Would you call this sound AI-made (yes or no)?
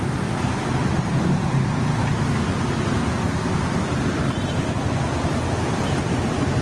no